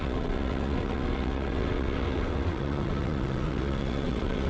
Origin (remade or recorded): remade